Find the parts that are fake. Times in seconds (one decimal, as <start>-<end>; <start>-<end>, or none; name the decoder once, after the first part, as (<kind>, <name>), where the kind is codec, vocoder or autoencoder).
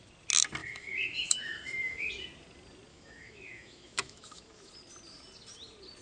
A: 0.6-2.1 (autoencoder, DAC-VAE); 2.9-4.7